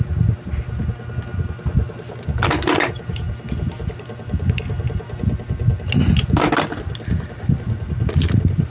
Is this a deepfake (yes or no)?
no